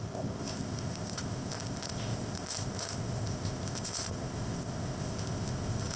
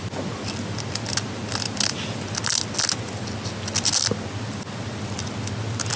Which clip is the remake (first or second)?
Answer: first